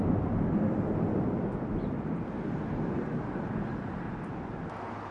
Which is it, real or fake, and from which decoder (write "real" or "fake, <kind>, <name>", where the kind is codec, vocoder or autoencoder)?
real